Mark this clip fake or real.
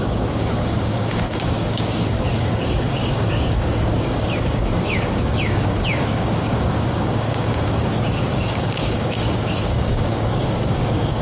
fake